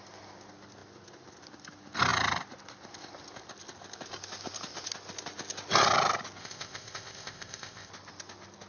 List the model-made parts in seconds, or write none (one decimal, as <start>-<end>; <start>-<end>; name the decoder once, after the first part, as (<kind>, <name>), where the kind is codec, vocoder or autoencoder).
6.4-7.9 (codec, ZipCodec)